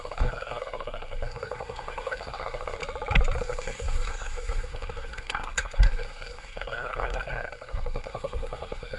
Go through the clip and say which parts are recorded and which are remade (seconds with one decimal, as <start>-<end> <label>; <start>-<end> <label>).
0.0-2.8 remade; 2.8-3.4 recorded; 3.4-9.0 remade